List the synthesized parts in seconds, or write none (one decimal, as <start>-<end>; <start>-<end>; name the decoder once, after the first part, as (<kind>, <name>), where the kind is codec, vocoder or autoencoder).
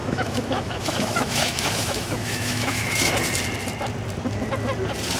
0.0-3.1 (autoencoder, DAC-VAE)